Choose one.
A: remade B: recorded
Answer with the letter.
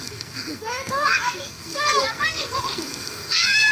A